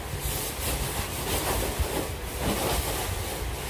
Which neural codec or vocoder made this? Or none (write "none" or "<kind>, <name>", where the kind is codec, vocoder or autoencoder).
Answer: none